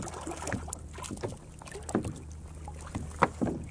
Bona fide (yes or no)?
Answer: yes